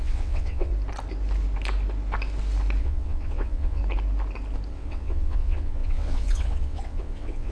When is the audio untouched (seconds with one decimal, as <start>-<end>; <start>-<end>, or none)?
0.7-2.8; 3.8-4.7